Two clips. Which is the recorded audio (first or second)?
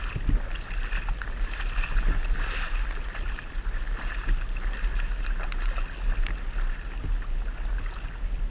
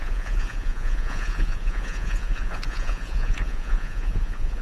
first